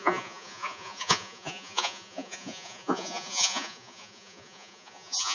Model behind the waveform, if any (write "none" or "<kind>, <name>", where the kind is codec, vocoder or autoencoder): vocoder, Vocos